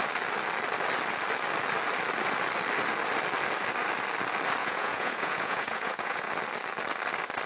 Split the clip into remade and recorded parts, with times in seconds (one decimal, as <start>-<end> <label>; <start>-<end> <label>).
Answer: 0.0-4.6 recorded; 4.6-6.3 remade; 6.3-7.5 recorded